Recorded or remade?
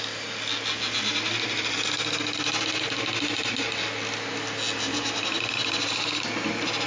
recorded